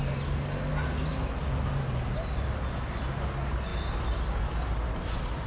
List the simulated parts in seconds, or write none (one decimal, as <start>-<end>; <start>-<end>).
none